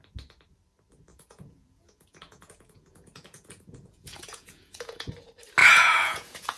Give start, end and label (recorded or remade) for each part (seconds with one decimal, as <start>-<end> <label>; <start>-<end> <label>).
0.0-1.1 recorded; 1.1-5.1 remade; 5.1-5.6 recorded; 5.6-6.6 remade